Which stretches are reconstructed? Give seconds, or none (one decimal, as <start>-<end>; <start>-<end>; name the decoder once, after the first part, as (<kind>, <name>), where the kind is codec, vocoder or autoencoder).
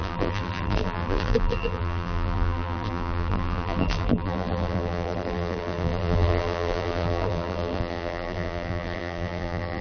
0.0-9.8 (vocoder, BigVGAN v2)